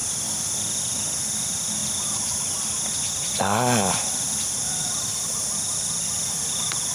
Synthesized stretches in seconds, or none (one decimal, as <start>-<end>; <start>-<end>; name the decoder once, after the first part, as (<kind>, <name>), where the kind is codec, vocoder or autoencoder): 0.0-1.2 (vocoder, BigVGAN v2); 1.8-4.8